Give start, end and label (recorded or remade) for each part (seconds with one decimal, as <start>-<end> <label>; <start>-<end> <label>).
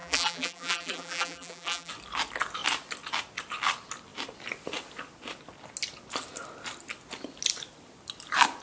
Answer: 0.0-1.9 remade; 1.9-8.6 recorded